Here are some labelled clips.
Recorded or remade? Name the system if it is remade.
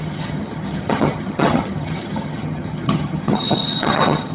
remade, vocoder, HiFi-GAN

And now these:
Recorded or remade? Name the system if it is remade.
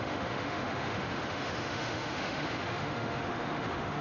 remade, autoencoder, DAC-VAE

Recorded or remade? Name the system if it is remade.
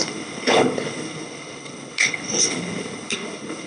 remade, codec, HILCodec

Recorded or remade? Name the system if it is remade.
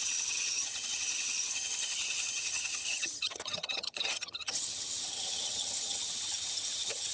remade, vocoder, HiFi-GAN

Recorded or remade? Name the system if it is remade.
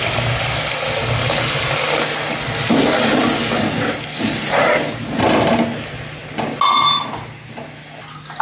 recorded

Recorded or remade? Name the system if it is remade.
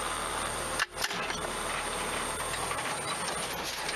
recorded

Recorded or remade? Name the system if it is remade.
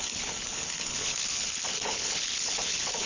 remade, codec, HILCodec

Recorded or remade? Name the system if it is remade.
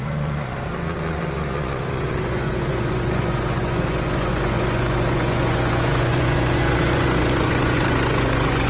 remade, vocoder, Vocos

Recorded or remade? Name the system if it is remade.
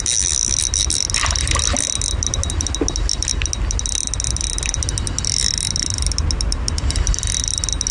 recorded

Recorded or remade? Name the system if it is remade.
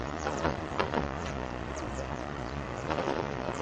remade, vocoder, Vocos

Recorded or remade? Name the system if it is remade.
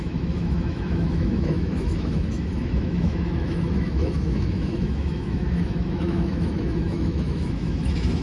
remade, autoencoder, DAC-VAE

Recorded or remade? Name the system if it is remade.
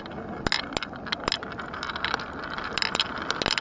recorded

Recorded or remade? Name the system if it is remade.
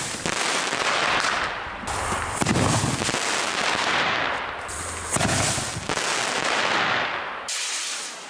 recorded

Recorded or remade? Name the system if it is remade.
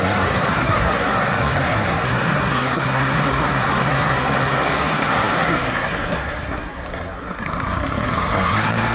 remade, codec, SNAC